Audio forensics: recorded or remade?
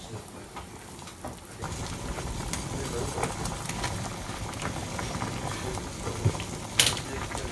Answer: recorded